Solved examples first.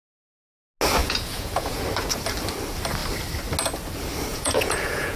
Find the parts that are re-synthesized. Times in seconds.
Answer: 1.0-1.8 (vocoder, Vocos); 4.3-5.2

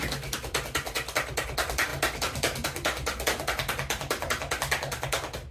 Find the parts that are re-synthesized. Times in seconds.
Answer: none

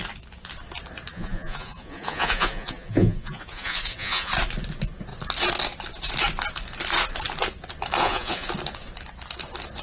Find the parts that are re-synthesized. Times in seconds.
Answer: 1.1-4.3 (vocoder, Vocos); 8.0-8.5